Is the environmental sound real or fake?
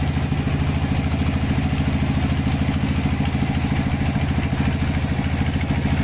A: real